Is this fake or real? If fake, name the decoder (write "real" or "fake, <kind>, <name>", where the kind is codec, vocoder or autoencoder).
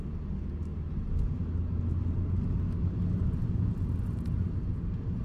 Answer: real